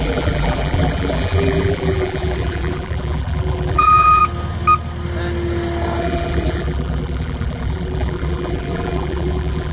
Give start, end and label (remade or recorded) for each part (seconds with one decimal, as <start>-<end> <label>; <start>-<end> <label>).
0.0-4.2 remade; 4.2-6.0 recorded; 6.0-9.7 remade